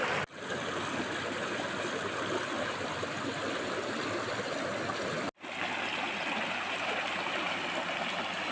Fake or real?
real